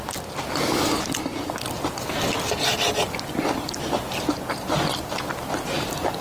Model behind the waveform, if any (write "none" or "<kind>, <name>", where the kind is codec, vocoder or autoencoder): none